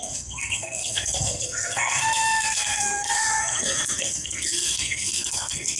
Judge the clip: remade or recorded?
remade